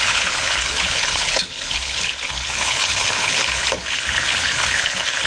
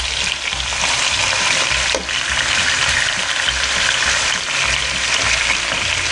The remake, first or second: first